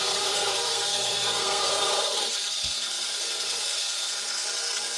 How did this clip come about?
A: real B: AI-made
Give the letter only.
B